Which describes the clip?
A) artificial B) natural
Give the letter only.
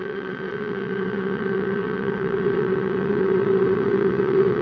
A